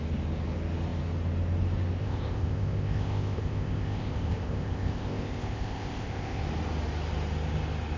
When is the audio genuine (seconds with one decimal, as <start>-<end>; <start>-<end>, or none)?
0.0-2.0; 6.4-8.0